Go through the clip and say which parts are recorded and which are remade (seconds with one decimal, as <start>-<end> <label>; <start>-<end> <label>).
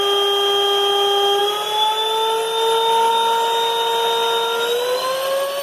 0.0-5.6 recorded